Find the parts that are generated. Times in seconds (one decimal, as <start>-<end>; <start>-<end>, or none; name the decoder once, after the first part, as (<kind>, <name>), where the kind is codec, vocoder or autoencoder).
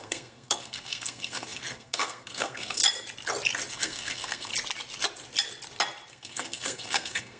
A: 0.0-2.8 (codec, SNAC); 3.7-4.5; 6.1-7.4